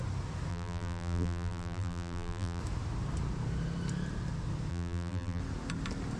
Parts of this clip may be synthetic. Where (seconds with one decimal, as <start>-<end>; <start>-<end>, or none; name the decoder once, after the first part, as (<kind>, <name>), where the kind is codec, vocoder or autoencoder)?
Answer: 0.5-2.6 (vocoder, BigVGAN v2); 4.7-5.4